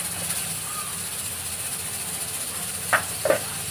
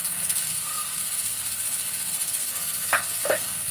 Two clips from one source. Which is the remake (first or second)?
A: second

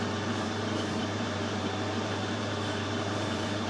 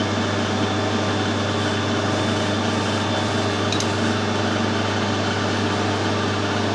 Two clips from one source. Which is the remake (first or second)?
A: first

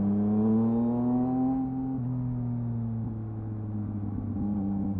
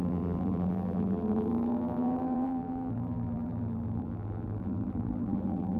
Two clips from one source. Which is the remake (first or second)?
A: second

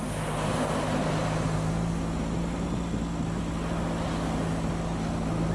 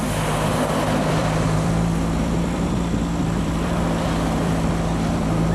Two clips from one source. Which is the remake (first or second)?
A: second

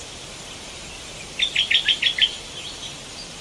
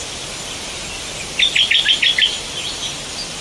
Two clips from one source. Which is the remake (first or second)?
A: first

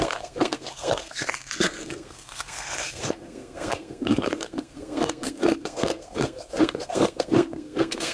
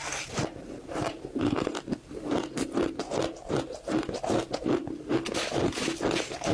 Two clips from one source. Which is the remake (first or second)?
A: first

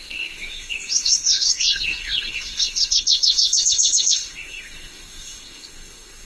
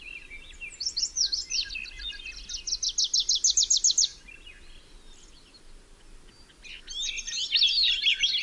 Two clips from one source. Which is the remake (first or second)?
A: first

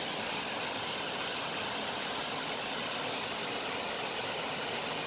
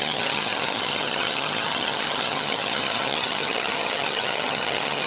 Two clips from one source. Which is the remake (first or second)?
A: second